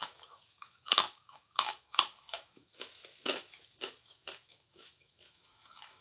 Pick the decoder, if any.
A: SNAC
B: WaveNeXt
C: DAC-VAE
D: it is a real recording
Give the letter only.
C